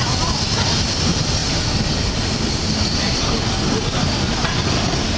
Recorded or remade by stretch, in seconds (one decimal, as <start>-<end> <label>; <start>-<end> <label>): 0.0-5.2 recorded